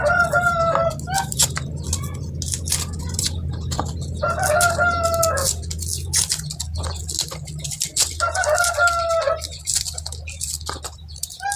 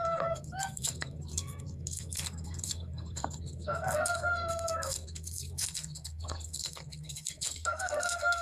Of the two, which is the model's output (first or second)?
second